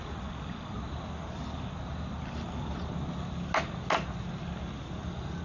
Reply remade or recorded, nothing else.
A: recorded